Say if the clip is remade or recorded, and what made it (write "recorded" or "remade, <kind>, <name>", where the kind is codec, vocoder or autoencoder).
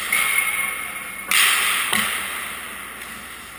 recorded